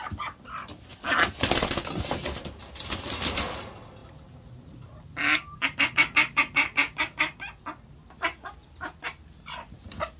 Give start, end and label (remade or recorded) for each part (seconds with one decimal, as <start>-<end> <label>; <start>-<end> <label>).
0.0-10.2 recorded